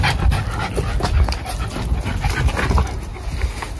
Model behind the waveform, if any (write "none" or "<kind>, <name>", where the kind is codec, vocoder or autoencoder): none